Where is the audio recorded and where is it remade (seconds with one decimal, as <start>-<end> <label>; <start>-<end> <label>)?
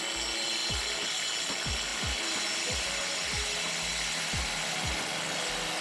0.0-1.9 recorded; 1.9-3.0 remade; 3.0-5.8 recorded